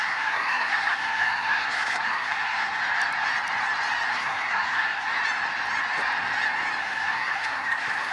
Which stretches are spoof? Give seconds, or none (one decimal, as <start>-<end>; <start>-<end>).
0.0-2.8; 4.1-5.1; 6.8-8.1